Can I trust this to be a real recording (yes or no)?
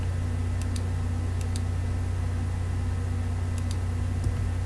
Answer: yes